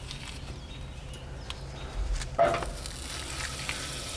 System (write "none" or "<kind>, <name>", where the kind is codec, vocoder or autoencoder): none